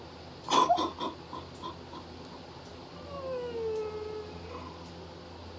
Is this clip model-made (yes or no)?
no